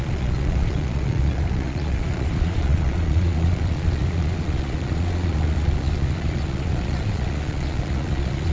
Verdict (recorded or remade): remade